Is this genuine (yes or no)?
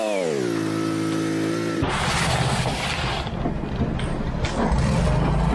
yes